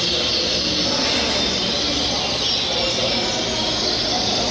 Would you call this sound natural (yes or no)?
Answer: yes